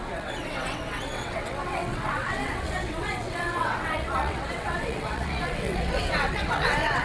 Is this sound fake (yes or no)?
yes